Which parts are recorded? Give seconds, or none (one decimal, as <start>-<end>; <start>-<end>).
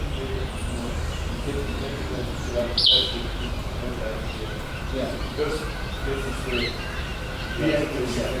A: 0.0-0.6; 5.6-7.1; 7.6-8.4